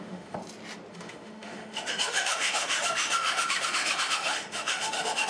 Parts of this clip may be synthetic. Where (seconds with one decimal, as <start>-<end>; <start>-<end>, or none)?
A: 0.0-0.4; 0.9-5.3